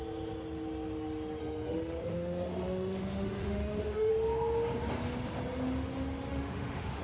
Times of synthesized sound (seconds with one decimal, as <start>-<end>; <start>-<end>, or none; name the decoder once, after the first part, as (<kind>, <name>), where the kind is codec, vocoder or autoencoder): 1.4-4.1 (autoencoder, DAC-VAE); 6.3-7.0